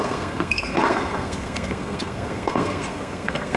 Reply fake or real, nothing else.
fake